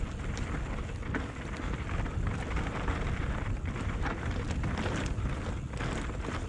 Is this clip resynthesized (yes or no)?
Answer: no